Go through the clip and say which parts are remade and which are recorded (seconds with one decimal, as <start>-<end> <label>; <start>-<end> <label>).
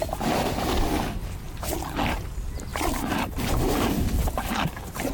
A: 0.0-2.7 recorded; 2.7-4.0 remade; 4.0-5.1 recorded